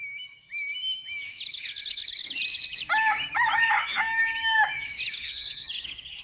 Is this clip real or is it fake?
fake